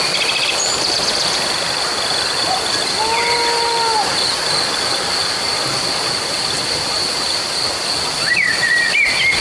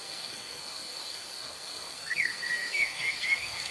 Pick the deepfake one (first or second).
second